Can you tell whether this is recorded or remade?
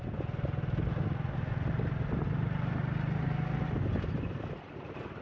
recorded